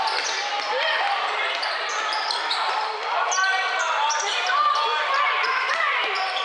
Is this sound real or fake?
real